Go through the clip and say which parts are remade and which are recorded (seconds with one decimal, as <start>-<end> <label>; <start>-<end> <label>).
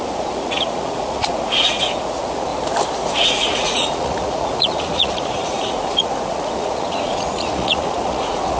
0.0-2.5 remade; 2.5-3.2 recorded; 3.2-8.6 remade